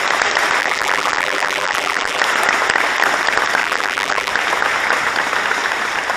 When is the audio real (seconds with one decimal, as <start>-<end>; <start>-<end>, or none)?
0.0-0.6; 2.2-3.6; 4.3-6.2